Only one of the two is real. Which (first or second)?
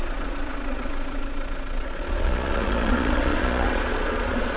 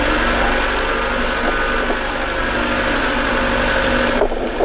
second